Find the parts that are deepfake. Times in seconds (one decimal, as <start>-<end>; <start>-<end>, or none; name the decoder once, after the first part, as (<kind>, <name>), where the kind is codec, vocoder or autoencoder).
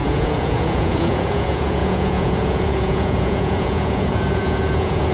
0.0-5.1 (vocoder, Vocos)